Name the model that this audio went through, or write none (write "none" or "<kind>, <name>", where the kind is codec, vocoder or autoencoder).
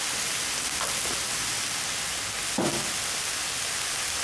none